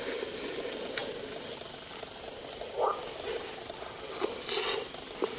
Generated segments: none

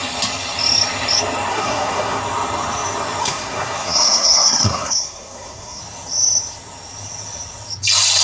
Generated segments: 1.5-2.2 (codec, SNAC); 3.2-5.8

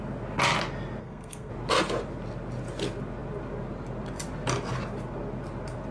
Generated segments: 1.0-1.5 (codec, SNAC)

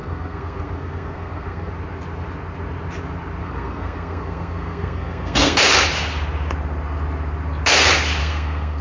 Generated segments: 0.0-1.7 (codec, SNAC); 3.4-5.6; 8.2-8.8

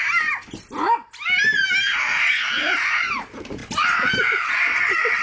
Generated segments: none

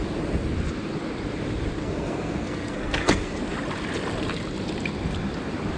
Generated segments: 1.8-3.4 (codec, SNAC)

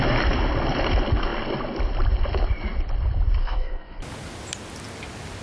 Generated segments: 3.4-4.0 (codec, SNAC)

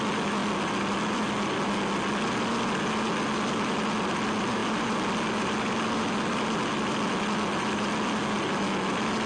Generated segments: none